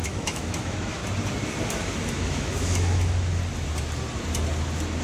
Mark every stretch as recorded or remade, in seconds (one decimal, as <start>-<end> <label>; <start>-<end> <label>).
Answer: 0.0-1.0 remade; 1.0-1.7 recorded; 1.7-3.4 remade; 3.4-5.0 recorded

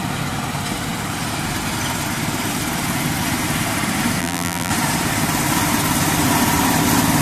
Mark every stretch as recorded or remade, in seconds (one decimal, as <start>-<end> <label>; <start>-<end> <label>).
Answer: 0.0-4.2 recorded; 4.2-4.7 remade; 4.7-7.2 recorded

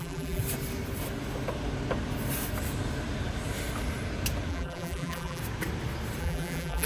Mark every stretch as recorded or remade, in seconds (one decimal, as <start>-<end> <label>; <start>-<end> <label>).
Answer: 0.0-0.4 remade; 0.4-4.5 recorded; 4.5-5.4 remade; 5.4-6.2 recorded; 6.2-6.9 remade

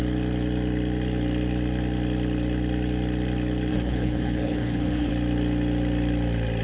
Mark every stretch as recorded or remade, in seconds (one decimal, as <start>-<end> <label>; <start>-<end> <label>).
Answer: 0.0-3.7 recorded; 3.7-5.1 remade; 5.1-6.6 recorded

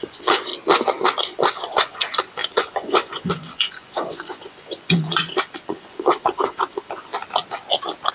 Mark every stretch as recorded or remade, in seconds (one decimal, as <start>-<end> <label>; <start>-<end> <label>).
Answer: 0.0-0.5 remade; 0.5-1.2 recorded; 1.2-7.1 remade; 7.1-8.1 recorded

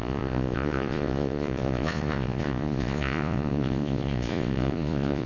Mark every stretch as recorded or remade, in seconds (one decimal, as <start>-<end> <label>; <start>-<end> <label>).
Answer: 0.0-5.3 remade

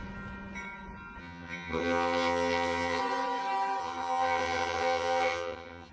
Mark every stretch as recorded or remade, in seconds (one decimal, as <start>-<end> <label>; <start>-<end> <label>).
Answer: 0.0-1.2 recorded; 1.2-3.0 remade; 3.0-3.8 recorded; 3.8-5.9 remade

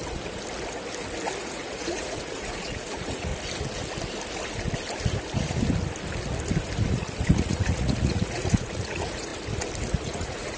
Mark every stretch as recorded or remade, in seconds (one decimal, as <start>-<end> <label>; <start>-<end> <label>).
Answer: 0.0-1.4 recorded; 1.4-3.3 remade; 3.3-6.9 recorded; 6.9-9.3 remade; 9.3-9.9 recorded; 9.9-10.6 remade